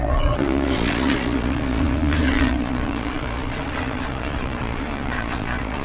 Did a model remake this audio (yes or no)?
yes